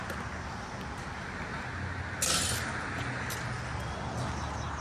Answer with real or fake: real